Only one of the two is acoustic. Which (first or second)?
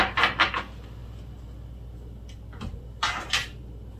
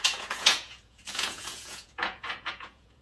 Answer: first